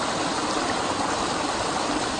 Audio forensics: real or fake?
real